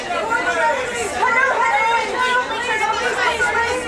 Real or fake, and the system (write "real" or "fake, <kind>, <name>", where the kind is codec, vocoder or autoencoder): real